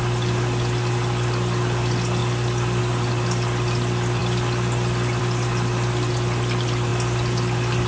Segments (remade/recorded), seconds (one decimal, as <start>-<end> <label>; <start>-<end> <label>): 0.0-7.9 recorded